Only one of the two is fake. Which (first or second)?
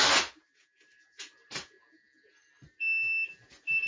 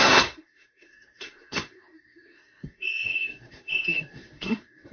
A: second